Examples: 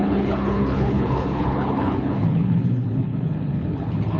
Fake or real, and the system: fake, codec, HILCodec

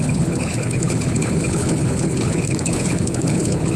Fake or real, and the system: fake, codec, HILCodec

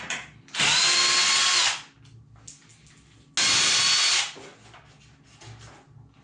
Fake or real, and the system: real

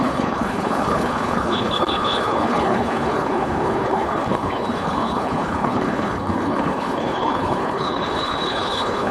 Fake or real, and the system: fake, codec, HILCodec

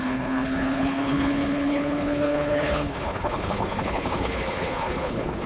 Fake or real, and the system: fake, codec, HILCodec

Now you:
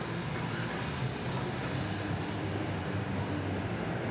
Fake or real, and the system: real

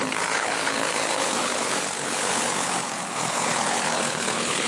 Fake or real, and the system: fake, codec, HILCodec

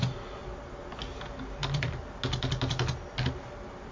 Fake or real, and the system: real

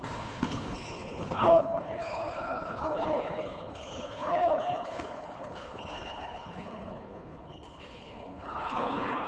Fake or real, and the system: fake, codec, HILCodec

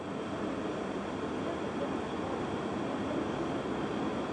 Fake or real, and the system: real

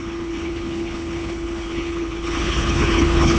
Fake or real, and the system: fake, codec, HILCodec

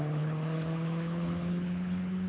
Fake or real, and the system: fake, codec, HILCodec